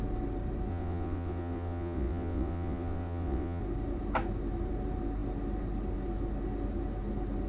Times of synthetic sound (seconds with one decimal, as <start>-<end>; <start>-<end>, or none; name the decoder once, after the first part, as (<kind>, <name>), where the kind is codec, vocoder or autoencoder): 0.7-3.6 (vocoder, WaveNeXt)